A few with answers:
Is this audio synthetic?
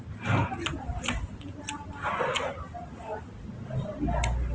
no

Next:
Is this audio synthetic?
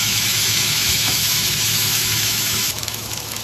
yes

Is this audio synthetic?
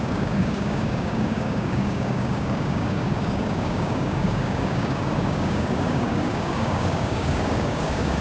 yes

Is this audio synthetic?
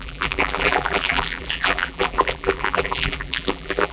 yes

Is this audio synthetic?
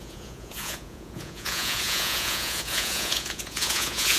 yes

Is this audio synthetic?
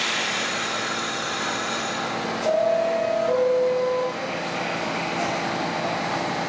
no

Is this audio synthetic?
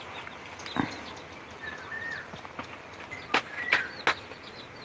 no